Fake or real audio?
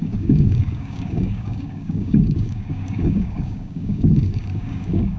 fake